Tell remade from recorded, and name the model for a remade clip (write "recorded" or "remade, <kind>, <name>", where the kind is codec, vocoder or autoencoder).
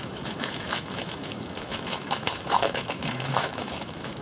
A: remade, autoencoder, DAC-VAE